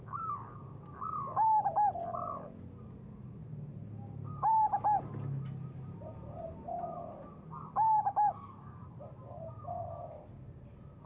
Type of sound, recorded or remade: recorded